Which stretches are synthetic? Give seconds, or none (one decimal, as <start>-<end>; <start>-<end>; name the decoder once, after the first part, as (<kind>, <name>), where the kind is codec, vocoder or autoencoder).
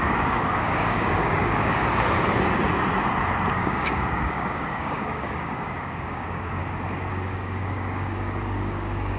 0.0-1.8 (codec, DAC); 3.5-6.6; 7.1-9.2